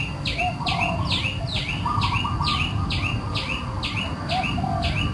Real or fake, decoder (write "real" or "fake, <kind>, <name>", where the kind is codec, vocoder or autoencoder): real